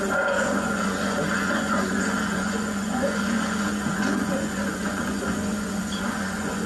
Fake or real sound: fake